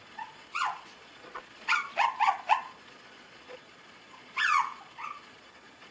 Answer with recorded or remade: remade